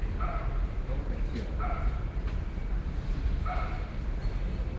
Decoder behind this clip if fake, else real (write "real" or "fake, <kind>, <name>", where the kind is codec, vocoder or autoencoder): real